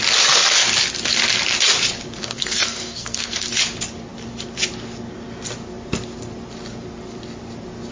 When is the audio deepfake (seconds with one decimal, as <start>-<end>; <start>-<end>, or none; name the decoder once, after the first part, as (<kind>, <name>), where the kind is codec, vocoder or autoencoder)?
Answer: 2.2-3.5 (codec, SNAC)